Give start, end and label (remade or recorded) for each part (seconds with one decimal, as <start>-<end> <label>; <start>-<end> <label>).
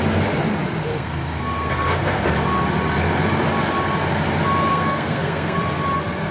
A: 0.0-0.9 recorded; 0.9-2.3 remade; 2.3-4.7 recorded; 4.7-5.6 remade; 5.6-6.3 recorded